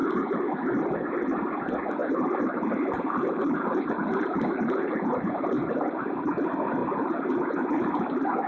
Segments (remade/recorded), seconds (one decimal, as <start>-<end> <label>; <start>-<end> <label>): 0.0-0.5 remade; 0.5-2.0 recorded; 2.0-5.7 remade; 5.7-6.8 recorded; 6.8-7.3 remade; 7.3-8.5 recorded